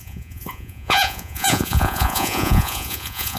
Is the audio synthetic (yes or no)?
yes